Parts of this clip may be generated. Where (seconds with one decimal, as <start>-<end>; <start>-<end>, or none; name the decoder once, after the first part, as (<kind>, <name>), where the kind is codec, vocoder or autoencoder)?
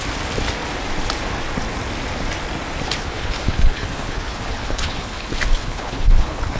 3.0-6.6 (codec, HILCodec)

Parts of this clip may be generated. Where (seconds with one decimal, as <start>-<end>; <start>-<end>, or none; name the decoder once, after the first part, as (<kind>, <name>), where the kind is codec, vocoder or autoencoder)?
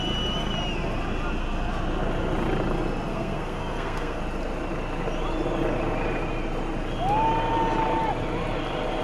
3.1-4.2 (codec, SNAC)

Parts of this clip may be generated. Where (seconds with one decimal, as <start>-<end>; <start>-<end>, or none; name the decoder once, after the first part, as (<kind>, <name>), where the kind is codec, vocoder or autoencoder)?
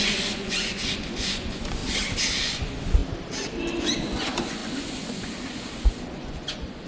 0.0-1.8 (vocoder, Vocos); 2.4-3.0; 3.8-6.9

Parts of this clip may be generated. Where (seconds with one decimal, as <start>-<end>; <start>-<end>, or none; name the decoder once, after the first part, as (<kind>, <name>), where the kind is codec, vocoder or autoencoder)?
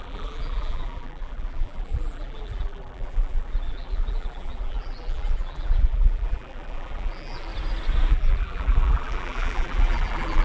0.0-7.5 (vocoder, BigVGAN v2); 8.1-10.4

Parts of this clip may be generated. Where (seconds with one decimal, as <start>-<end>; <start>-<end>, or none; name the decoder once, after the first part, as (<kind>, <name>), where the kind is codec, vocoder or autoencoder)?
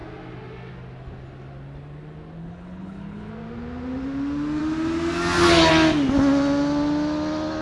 2.4-3.3 (codec, HILCodec)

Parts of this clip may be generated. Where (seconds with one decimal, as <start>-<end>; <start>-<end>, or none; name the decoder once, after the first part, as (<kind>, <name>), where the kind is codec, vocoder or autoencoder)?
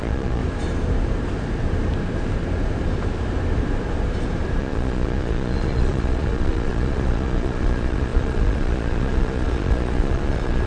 0.0-0.4 (vocoder, Vocos); 4.6-10.7